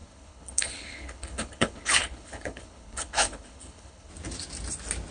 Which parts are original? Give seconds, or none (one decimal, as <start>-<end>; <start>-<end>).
4.1-5.1

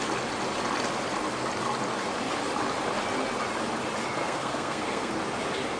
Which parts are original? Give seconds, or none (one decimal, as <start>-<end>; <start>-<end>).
0.0-4.2; 5.1-5.8

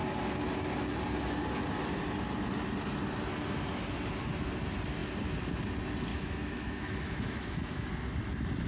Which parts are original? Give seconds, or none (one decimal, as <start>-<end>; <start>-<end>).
0.0-6.1; 7.9-8.7

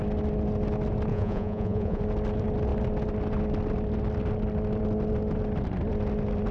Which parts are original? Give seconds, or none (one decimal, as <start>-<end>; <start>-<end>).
0.0-1.1; 2.0-6.5